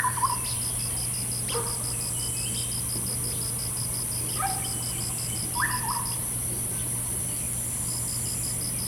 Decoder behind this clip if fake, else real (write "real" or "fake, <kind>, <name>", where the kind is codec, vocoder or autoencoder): real